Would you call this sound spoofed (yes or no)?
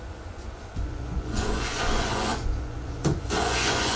yes